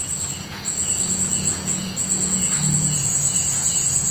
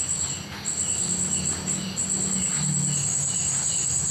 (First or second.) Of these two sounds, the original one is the second